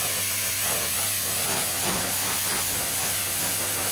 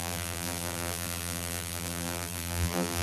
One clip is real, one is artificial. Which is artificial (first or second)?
second